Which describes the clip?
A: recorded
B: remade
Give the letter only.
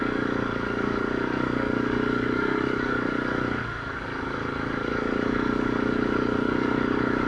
B